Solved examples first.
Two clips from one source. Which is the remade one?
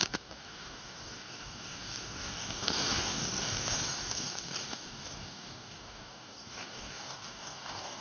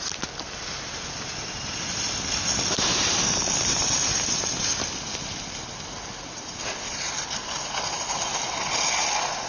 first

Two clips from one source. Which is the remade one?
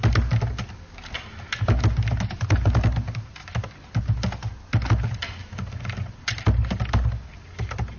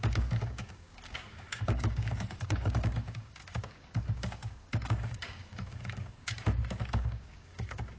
second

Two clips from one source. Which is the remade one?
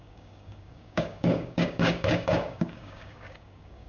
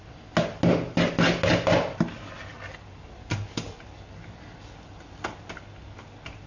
first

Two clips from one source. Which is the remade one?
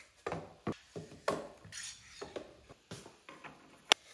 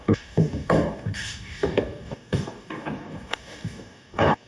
second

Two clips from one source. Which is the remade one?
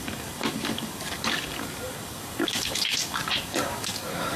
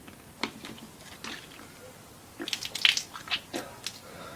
first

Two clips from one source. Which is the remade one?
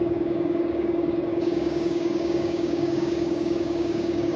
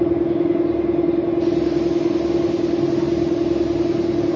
first